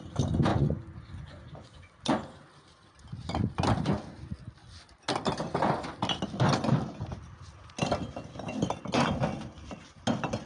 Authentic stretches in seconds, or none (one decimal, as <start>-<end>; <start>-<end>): 0.0-0.5; 1.9-10.5